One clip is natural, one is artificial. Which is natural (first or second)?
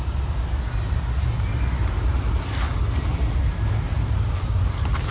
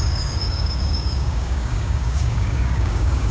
first